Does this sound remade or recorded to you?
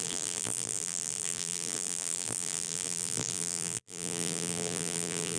remade